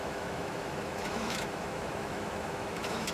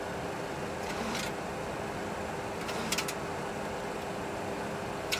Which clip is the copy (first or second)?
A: first